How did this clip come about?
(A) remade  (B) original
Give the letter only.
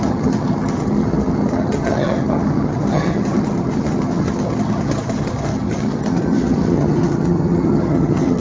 A